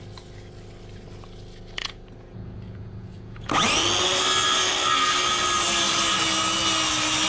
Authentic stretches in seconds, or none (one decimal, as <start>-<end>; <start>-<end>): 0.0-1.8; 3.5-7.3